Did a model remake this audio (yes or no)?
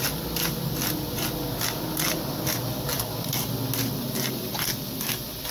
no